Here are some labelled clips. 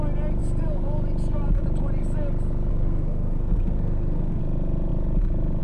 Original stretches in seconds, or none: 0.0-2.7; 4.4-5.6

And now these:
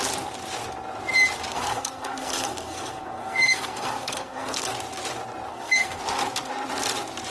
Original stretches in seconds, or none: 0.0-1.5; 4.7-5.5; 6.0-7.3

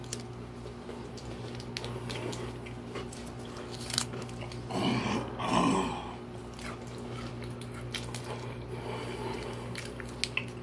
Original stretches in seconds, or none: 0.0-10.6

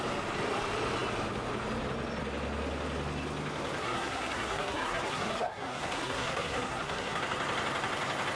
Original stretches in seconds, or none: 0.0-3.8; 7.2-8.4

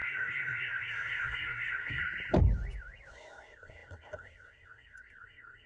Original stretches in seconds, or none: 2.0-3.1

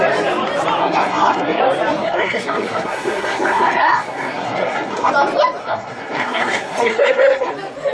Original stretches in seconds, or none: 0.0-0.8; 1.6-2.0; 5.1-5.6; 7.5-7.9